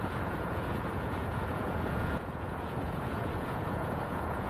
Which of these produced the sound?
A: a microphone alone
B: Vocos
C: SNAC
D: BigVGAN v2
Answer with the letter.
B